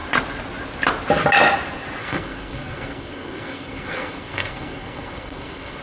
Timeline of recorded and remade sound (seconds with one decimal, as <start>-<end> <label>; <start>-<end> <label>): 0.0-2.0 recorded; 2.0-5.8 remade